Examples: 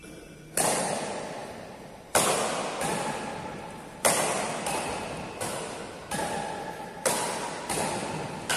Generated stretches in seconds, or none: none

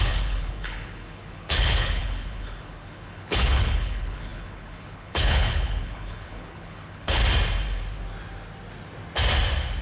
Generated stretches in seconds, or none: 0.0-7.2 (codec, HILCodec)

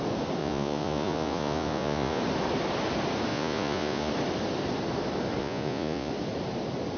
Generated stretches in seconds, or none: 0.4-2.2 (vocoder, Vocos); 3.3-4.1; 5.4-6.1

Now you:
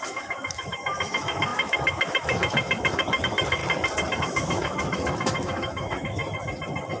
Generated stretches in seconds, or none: 0.0-3.6 (autoencoder, DAC-VAE); 4.2-6.2

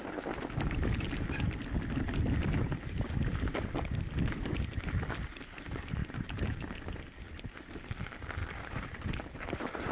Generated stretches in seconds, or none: 6.0-6.8 (vocoder, BigVGAN v2); 8.4-9.9

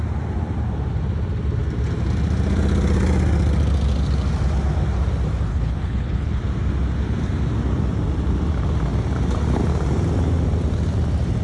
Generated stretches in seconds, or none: 5.5-6.4 (codec, HILCodec)

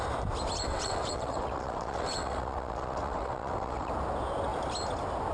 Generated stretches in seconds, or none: 0.7-3.9 (vocoder, WaveNeXt)